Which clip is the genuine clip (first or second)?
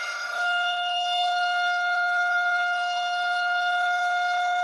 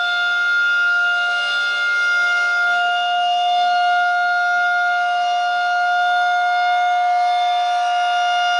second